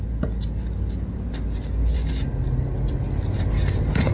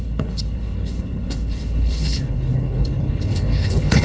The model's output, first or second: second